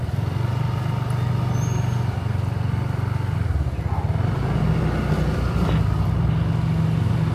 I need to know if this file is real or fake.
real